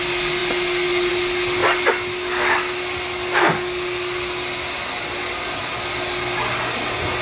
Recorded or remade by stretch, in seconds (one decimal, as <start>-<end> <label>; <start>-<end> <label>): 0.0-7.2 recorded